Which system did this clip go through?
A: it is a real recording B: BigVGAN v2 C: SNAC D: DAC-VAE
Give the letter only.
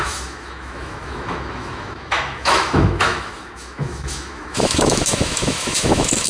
D